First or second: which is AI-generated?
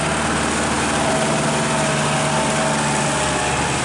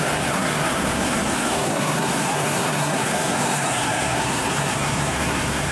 second